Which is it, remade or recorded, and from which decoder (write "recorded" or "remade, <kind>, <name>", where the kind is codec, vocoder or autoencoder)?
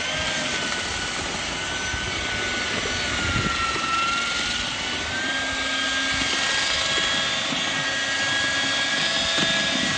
recorded